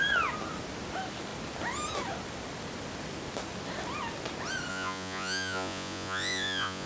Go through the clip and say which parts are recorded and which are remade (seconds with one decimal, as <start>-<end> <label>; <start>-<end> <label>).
0.0-4.7 recorded; 4.7-6.9 remade